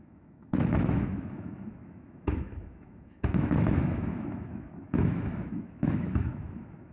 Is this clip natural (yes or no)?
no